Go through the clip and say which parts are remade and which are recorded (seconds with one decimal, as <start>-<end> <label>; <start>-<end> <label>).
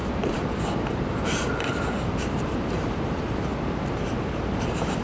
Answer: 0.0-3.5 remade; 3.5-4.6 recorded; 4.6-5.0 remade